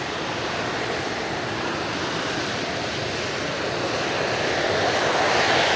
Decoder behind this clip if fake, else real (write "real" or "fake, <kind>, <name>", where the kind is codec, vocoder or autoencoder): real